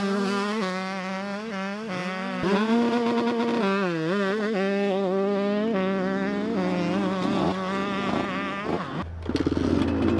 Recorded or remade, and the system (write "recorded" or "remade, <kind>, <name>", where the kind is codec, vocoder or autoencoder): recorded